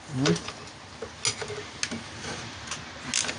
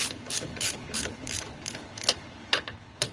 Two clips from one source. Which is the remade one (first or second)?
second